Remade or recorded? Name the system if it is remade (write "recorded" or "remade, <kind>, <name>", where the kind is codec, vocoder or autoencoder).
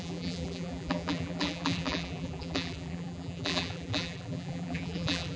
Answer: remade, vocoder, BigVGAN v2